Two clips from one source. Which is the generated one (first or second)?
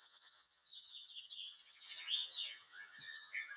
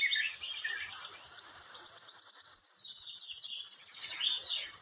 first